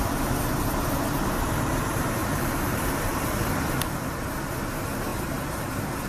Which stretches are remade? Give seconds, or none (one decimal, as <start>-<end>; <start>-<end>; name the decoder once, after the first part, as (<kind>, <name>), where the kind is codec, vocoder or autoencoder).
2.2-4.0 (vocoder, BigVGAN v2)

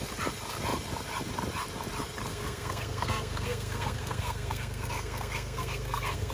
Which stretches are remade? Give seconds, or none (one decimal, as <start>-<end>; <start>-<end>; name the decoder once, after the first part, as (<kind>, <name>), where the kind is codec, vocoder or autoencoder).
2.3-6.3 (codec, SNAC)